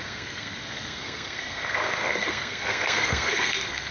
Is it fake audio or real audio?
fake